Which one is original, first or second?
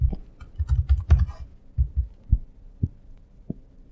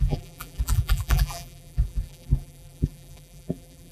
first